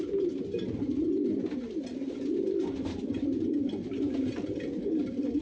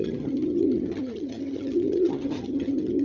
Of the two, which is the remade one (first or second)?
second